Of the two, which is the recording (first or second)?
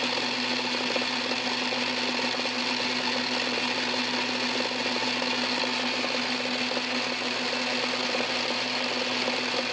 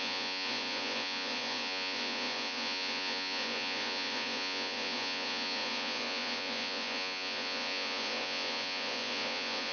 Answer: first